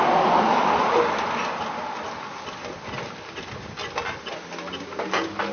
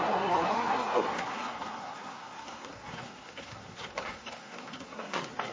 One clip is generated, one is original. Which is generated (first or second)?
second